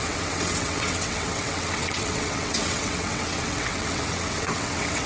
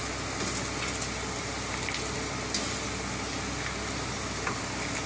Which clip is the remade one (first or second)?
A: first